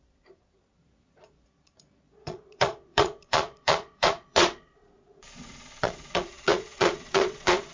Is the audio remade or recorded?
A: remade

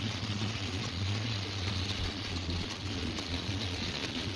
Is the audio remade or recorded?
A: remade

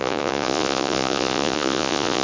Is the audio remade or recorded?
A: remade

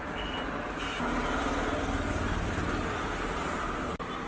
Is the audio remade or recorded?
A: recorded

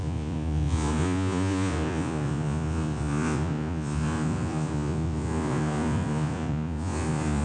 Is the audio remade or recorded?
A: remade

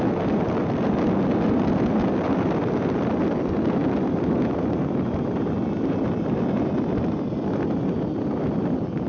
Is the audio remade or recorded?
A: recorded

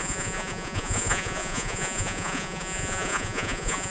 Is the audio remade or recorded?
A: remade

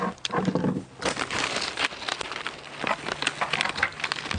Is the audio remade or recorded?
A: recorded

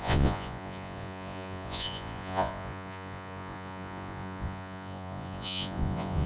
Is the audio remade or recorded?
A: remade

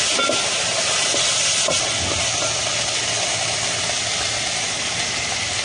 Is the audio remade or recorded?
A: recorded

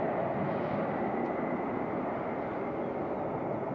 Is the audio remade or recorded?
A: recorded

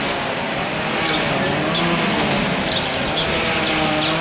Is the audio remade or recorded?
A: recorded